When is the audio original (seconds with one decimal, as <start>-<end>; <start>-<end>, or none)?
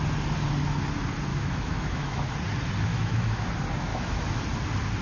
0.0-1.3; 2.3-2.9; 3.5-3.9; 4.4-5.0